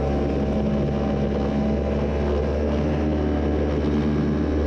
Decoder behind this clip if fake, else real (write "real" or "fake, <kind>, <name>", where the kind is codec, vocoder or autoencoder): real